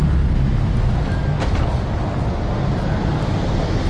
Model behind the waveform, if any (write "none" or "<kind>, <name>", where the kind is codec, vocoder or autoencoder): none